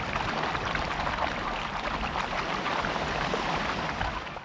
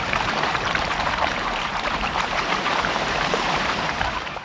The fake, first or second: second